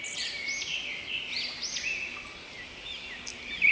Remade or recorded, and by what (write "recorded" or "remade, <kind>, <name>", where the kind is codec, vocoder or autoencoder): recorded